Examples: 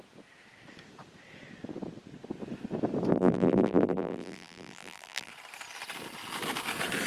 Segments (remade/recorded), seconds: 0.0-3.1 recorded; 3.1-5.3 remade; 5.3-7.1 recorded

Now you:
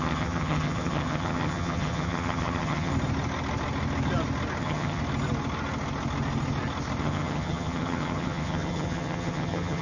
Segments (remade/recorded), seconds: 0.0-2.9 remade; 2.9-4.6 recorded; 4.6-5.0 remade; 5.0-7.0 recorded; 7.0-9.8 remade